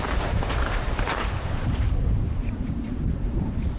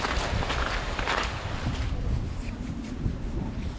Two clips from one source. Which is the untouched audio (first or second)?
second